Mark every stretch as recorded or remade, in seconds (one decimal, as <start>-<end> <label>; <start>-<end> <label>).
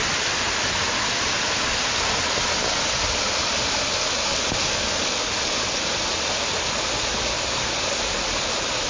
0.0-8.9 recorded